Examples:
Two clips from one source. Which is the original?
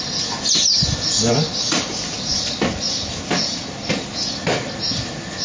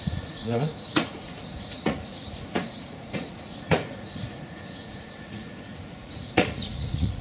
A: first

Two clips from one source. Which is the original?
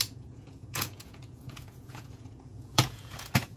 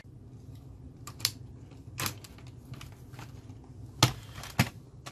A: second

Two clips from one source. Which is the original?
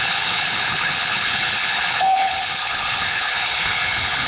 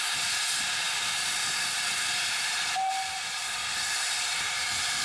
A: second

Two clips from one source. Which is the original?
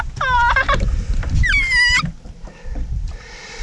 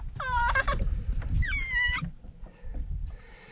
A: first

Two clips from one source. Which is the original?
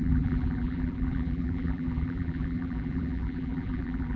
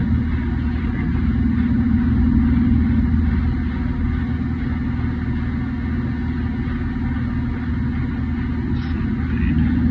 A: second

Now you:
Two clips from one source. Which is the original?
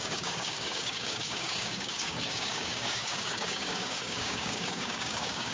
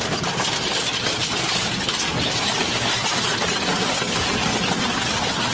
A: second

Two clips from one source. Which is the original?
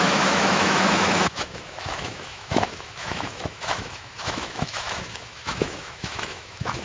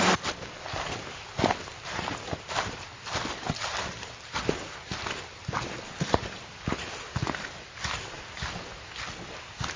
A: second